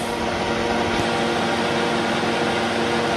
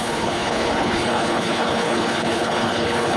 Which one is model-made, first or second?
second